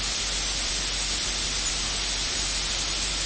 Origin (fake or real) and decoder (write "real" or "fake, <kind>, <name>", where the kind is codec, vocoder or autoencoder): real